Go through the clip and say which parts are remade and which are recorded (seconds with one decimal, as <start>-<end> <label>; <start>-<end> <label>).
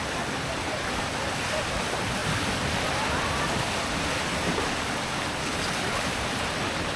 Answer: 0.0-7.0 recorded